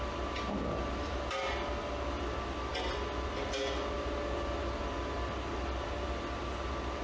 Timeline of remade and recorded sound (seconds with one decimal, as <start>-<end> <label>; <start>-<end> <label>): 0.0-7.0 recorded